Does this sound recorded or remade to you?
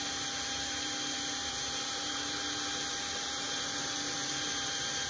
remade